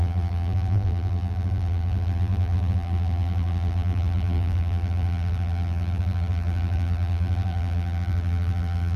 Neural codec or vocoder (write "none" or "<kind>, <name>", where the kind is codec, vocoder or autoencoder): vocoder, BigVGAN v2